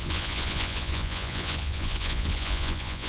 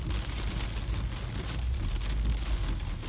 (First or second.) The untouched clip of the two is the second